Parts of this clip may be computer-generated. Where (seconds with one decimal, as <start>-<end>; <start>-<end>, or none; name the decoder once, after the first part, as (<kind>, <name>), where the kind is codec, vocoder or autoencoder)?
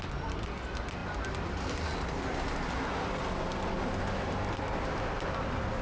none